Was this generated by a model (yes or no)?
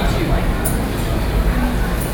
no